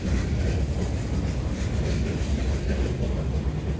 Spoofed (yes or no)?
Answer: no